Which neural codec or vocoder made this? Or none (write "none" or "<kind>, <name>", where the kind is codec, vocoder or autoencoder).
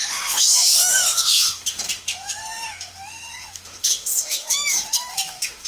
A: autoencoder, DAC-VAE